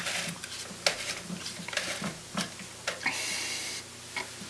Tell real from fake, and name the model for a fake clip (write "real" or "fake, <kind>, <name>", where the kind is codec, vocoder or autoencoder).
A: real